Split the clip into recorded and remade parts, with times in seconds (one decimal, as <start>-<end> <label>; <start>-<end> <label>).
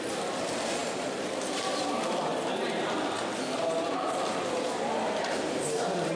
0.0-6.2 recorded